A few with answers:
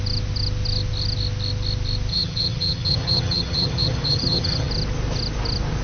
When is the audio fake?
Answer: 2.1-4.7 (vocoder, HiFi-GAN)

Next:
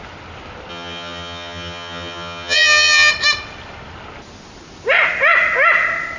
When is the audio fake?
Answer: 0.7-3.1 (vocoder, HiFi-GAN)

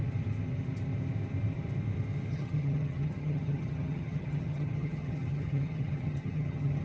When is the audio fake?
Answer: 2.3-6.8 (vocoder, HiFi-GAN)

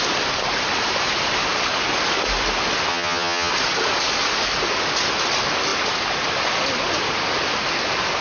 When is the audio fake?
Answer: 2.9-3.5 (vocoder, HiFi-GAN)

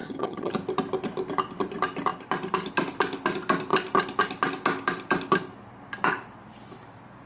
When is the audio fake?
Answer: 0.0-0.5 (vocoder, HiFi-GAN)

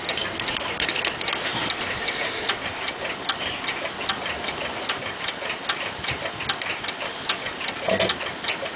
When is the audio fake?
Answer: none